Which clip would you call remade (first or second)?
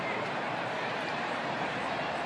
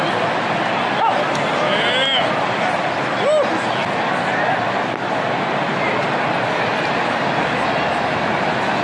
first